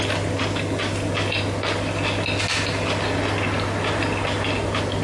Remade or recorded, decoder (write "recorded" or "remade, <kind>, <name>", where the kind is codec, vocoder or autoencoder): recorded